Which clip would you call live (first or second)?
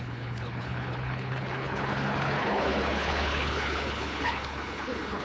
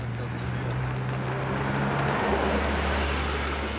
second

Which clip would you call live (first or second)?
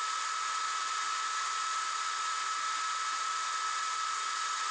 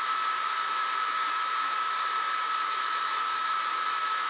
first